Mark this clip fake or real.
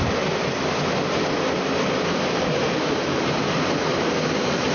real